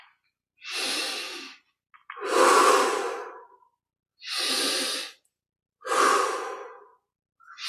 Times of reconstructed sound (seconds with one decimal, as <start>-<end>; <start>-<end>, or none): none